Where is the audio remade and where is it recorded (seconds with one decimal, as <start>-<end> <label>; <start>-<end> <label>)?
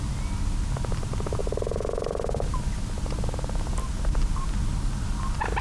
0.0-5.6 recorded